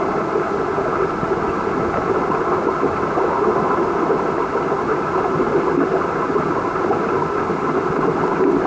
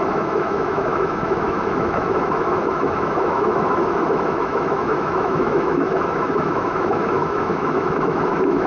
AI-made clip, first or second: second